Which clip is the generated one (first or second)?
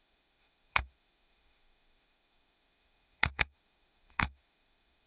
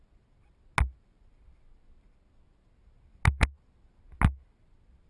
first